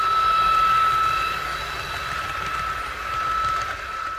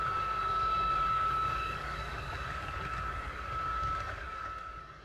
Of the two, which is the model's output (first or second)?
second